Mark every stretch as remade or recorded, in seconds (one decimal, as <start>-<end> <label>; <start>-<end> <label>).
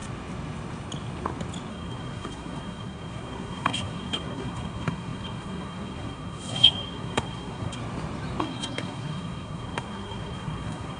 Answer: 0.0-1.7 recorded; 1.7-7.8 remade; 7.8-8.4 recorded; 8.4-11.0 remade